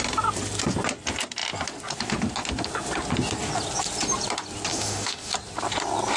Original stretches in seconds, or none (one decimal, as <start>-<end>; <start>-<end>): 0.0-4.7; 5.3-6.2